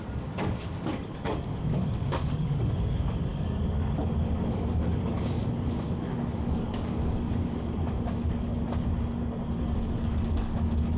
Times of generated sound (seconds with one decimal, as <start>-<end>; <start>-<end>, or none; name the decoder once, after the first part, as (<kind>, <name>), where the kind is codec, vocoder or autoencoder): 0.0-8.5 (codec, DAC); 9.6-11.0